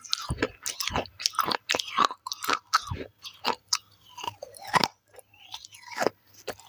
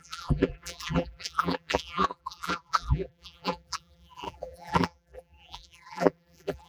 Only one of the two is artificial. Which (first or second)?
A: second